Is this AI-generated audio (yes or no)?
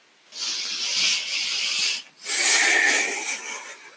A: no